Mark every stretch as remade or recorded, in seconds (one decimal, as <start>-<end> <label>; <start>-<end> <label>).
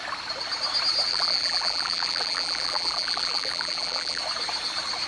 0.0-1.1 recorded; 1.1-4.2 remade; 4.2-5.1 recorded